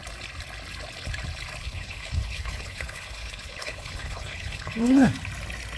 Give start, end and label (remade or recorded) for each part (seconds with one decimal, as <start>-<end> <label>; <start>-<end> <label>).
0.0-1.6 recorded; 1.6-5.1 remade; 5.1-5.8 recorded